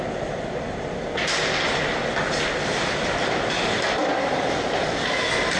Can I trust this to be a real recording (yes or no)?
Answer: yes